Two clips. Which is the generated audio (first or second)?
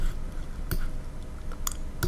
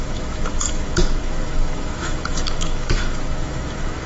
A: second